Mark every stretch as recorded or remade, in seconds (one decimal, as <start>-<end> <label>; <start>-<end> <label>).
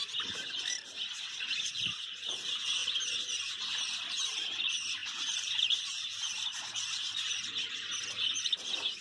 0.0-9.0 recorded